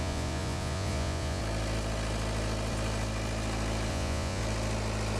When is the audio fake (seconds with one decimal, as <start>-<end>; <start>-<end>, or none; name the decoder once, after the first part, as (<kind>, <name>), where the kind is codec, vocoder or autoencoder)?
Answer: 0.0-1.4 (vocoder, Vocos); 3.9-4.4